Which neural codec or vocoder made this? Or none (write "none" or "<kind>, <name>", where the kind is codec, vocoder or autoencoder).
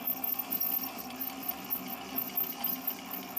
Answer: none